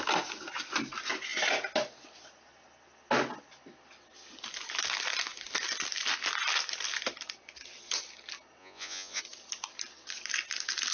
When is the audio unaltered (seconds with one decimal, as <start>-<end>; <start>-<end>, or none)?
0.0-8.6; 9.2-10.9